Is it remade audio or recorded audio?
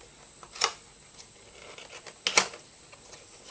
recorded